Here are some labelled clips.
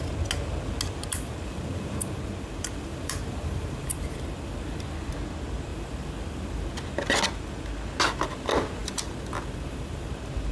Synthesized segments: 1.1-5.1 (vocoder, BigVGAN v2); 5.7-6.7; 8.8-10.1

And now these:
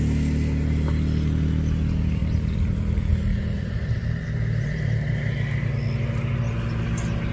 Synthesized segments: 2.2-5.1 (vocoder, BigVGAN v2)

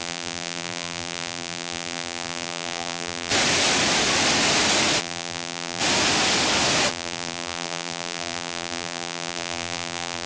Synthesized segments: 0.0-3.3 (vocoder, BigVGAN v2); 5.0-5.8; 6.9-10.3

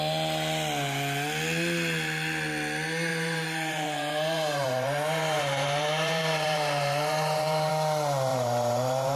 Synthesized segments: 3.1-7.7 (vocoder, BigVGAN v2); 8.3-9.2

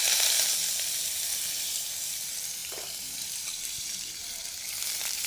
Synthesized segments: 0.0-5.3 (vocoder, BigVGAN v2)

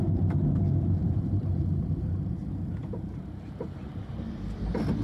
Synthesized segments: 1.0-2.4 (vocoder, BigVGAN v2); 2.8-3.9